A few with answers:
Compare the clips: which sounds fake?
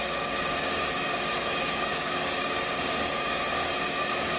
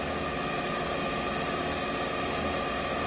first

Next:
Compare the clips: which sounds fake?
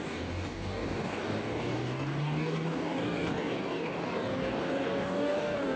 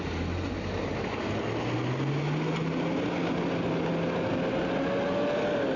first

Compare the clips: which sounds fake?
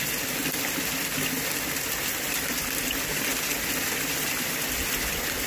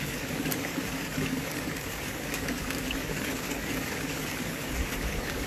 second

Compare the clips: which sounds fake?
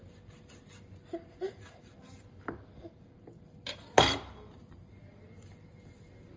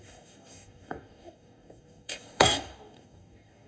second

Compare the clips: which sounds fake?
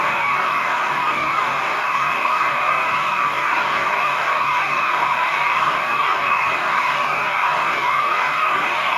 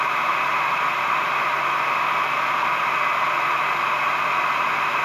first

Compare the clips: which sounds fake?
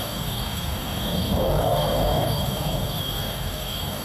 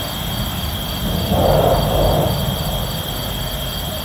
first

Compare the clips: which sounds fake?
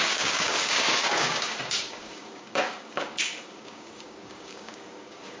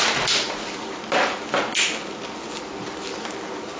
first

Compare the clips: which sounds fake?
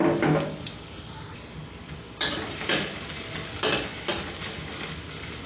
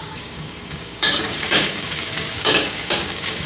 second